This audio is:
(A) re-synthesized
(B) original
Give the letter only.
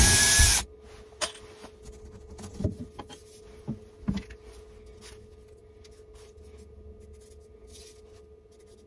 B